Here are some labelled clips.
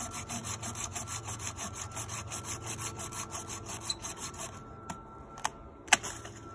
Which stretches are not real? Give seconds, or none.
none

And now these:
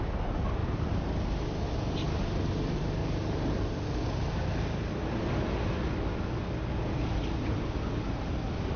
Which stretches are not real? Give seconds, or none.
0.6-1.3 (vocoder, BigVGAN v2); 3.0-5.3; 7.2-8.2

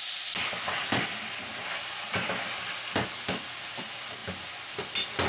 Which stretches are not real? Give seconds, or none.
none

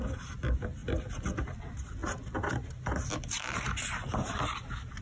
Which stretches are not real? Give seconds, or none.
none

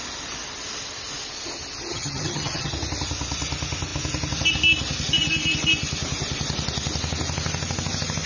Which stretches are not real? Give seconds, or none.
1.9-2.7 (vocoder, HiFi-GAN)

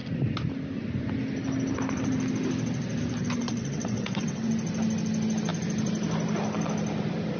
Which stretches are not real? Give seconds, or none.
3.4-4.5 (vocoder, WaveNeXt)

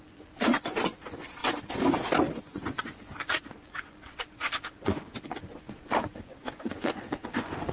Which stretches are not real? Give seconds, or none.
0.0-1.4 (vocoder, Vocos); 2.4-7.7

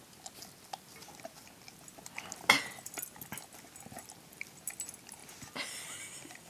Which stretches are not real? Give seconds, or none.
none